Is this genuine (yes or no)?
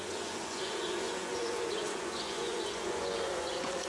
no